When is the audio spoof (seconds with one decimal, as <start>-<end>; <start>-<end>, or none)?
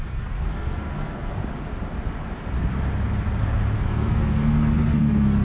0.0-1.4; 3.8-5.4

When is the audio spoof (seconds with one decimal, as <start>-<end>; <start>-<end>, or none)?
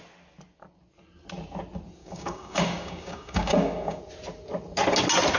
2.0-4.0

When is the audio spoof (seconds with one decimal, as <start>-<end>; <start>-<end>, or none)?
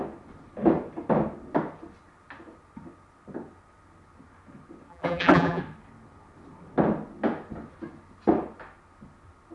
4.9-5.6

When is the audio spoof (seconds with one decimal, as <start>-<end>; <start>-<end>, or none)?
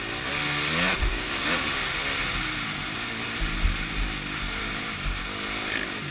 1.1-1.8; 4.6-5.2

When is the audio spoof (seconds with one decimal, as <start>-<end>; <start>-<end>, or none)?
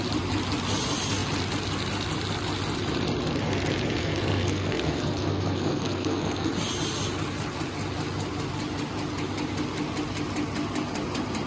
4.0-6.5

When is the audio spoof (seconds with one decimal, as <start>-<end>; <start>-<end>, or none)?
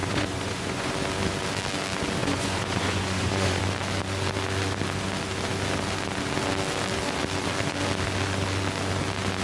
0.0-0.9; 2.2-3.6